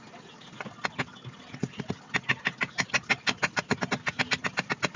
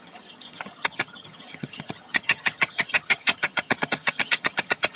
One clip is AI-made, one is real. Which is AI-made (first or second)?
second